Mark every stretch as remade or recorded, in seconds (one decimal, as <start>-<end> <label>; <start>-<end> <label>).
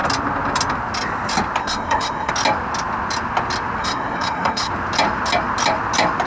0.0-1.6 recorded; 1.6-2.3 remade; 2.3-3.8 recorded; 3.8-4.7 remade; 4.7-6.3 recorded